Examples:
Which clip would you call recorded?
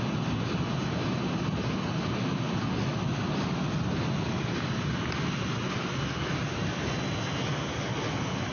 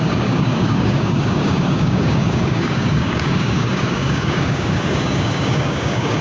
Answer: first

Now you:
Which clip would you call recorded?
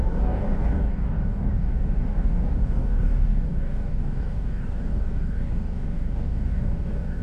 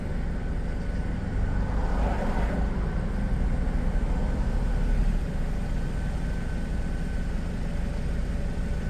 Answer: second